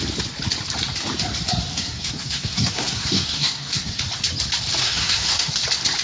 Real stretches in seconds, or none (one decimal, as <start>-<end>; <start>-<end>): 0.0-1.7; 4.0-4.8; 5.5-6.0